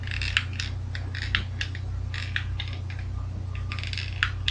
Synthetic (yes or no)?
no